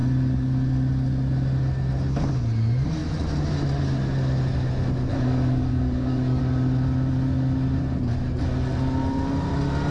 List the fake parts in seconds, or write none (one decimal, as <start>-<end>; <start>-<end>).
5.1-6.4